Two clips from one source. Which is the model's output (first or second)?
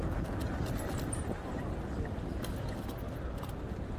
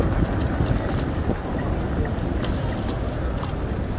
second